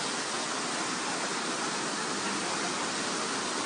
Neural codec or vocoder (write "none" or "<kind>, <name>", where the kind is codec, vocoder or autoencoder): none